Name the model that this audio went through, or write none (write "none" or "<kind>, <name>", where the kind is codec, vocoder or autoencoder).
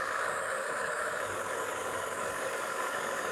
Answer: codec, DAC